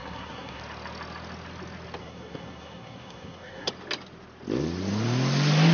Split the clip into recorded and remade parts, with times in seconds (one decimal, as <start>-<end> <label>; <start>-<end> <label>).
0.0-0.6 remade; 0.6-2.0 recorded; 2.0-3.7 remade; 3.7-5.7 recorded